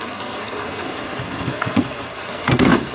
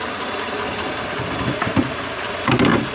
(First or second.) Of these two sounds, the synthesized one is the first